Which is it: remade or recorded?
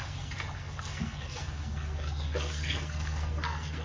remade